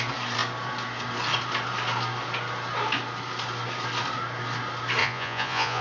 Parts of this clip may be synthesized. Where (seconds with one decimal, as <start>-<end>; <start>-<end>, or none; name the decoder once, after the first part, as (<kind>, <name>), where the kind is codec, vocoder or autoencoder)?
5.0-5.8 (vocoder, Vocos)